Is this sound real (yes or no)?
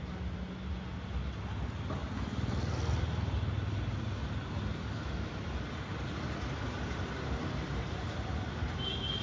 yes